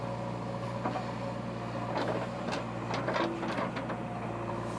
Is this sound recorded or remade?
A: recorded